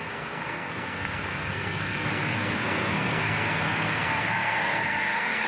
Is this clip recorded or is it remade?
remade